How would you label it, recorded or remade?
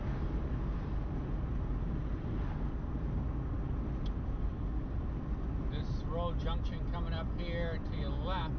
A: recorded